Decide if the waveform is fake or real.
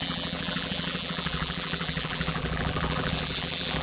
fake